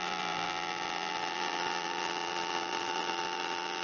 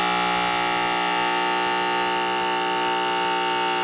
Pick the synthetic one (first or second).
first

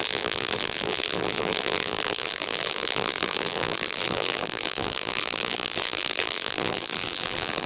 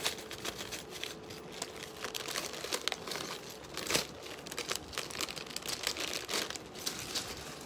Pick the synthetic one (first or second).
first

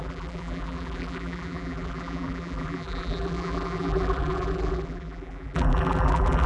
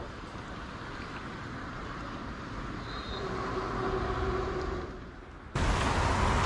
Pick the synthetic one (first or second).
first